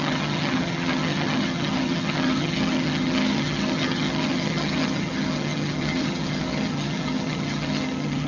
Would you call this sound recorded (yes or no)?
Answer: no